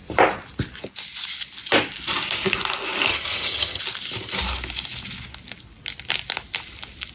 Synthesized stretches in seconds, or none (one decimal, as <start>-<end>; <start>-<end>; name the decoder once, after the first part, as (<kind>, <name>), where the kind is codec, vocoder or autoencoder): 3.1-3.8 (vocoder, HiFi-GAN)